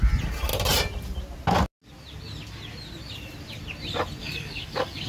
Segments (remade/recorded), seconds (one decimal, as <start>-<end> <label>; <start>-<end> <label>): 0.0-4.2 recorded; 4.2-5.1 remade